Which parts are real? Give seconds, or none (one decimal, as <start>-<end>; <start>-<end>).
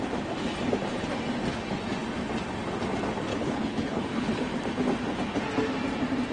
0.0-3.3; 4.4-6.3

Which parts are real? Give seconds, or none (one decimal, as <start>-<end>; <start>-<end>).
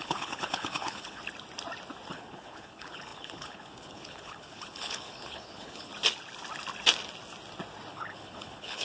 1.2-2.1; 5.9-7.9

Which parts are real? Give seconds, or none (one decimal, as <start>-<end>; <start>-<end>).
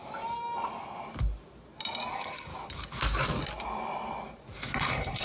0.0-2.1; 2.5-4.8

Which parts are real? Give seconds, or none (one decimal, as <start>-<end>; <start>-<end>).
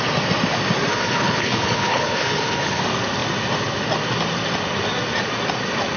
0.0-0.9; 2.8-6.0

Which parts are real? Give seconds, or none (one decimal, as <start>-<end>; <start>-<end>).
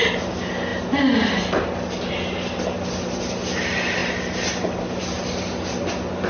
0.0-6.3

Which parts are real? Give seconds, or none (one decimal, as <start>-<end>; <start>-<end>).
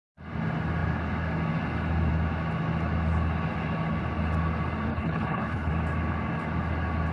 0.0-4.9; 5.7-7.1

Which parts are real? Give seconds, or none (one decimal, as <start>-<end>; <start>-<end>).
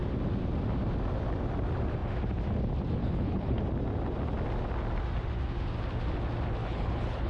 0.0-3.0; 3.6-6.6